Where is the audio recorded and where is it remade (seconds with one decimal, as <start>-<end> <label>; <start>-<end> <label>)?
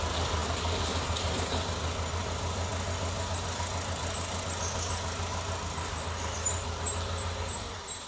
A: 0.0-8.1 recorded